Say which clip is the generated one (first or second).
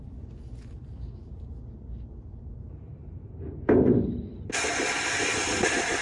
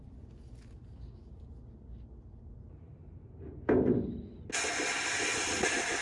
first